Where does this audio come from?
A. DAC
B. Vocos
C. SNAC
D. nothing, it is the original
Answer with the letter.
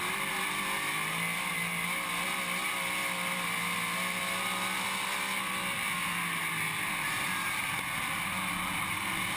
D